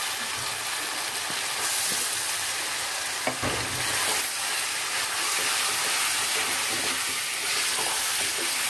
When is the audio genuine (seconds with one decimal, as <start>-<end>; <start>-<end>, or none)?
0.0-8.7